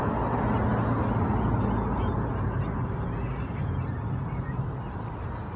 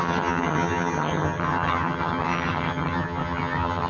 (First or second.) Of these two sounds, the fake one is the second